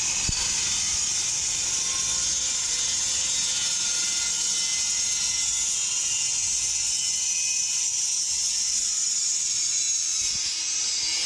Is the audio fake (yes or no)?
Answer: no